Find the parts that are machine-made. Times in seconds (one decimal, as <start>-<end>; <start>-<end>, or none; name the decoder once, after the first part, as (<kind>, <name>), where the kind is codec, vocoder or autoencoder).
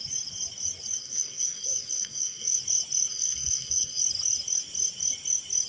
1.0-2.6 (codec, SNAC); 3.1-4.0